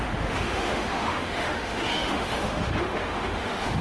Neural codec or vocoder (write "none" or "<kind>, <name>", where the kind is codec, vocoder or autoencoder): autoencoder, DAC-VAE